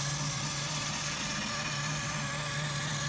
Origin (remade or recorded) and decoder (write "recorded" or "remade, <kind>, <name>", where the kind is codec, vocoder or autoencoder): recorded